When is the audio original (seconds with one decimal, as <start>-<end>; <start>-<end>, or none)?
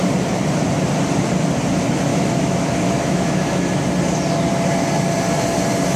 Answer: 0.0-2.1; 3.7-6.0